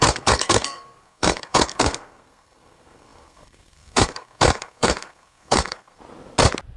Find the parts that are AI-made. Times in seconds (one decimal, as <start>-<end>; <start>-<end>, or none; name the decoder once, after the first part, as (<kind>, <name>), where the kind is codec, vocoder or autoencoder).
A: 0.0-6.0 (codec, SNAC)